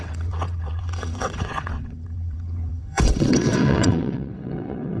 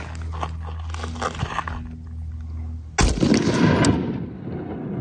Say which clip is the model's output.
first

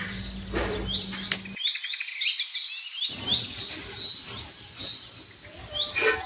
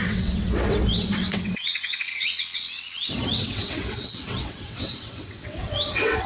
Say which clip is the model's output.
second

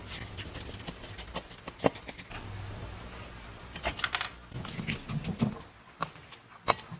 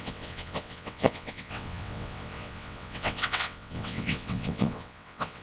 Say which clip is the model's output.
second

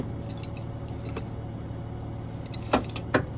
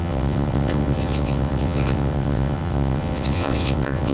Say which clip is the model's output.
second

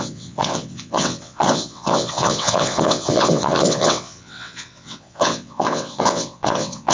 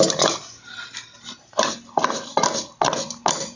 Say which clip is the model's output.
first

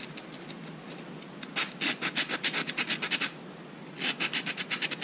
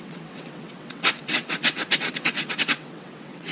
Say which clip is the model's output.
second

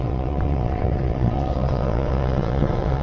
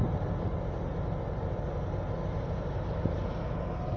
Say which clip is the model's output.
first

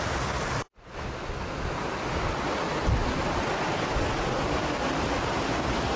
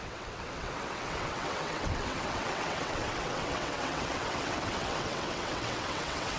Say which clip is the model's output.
second